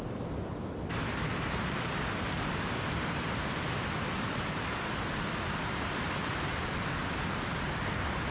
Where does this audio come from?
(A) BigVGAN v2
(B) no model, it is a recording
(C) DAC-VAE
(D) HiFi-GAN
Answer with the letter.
A